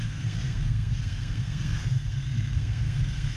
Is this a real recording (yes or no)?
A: no